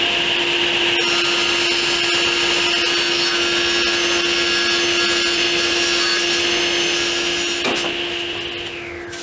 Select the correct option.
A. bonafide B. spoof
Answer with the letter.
A